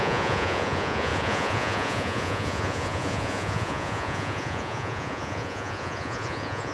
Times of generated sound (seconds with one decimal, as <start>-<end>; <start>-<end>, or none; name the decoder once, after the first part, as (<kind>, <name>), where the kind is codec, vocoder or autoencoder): 0.0-6.7 (vocoder, Vocos)